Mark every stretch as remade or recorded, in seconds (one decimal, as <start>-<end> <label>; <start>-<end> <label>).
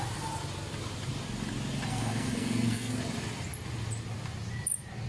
0.0-1.9 recorded; 1.9-3.0 remade; 3.0-5.1 recorded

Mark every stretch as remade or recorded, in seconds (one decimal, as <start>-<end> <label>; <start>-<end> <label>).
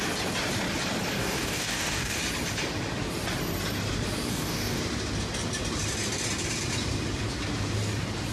0.0-1.2 recorded; 1.2-2.2 remade; 2.2-4.3 recorded; 4.3-4.8 remade; 4.8-8.3 recorded